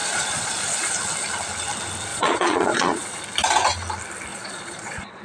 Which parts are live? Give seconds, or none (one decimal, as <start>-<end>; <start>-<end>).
0.9-2.1; 3.2-4.3

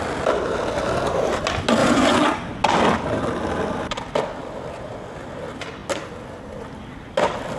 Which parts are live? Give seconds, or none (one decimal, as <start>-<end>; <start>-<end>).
0.0-1.8; 2.6-7.6

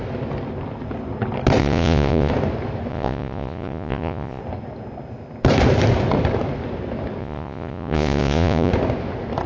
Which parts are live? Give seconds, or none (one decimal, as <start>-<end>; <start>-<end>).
0.0-1.6; 2.3-2.9; 4.4-7.2; 8.7-9.5